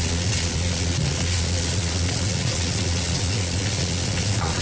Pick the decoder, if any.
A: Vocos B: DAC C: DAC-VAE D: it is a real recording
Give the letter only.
A